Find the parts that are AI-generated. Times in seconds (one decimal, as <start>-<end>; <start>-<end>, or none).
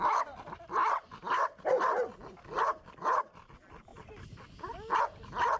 none